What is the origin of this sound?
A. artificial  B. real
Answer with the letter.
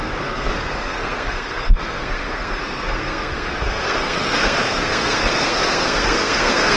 A